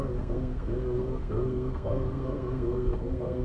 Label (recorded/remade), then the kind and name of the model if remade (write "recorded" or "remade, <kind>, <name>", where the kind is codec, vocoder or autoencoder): remade, codec, SNAC